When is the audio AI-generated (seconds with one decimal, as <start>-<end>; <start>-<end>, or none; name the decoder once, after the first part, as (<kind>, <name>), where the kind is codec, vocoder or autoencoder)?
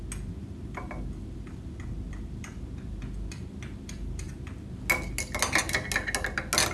0.4-4.4 (vocoder, BigVGAN v2)